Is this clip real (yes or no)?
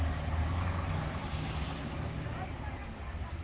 yes